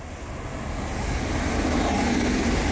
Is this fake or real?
real